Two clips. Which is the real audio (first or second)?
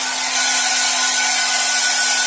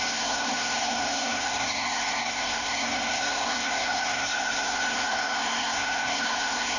first